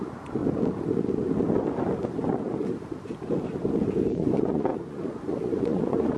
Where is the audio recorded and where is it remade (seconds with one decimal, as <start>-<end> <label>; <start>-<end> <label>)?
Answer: 0.0-0.4 remade; 0.4-4.1 recorded; 4.1-6.2 remade